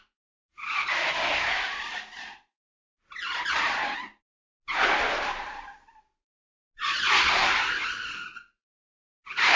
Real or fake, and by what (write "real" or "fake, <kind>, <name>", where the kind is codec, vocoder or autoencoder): real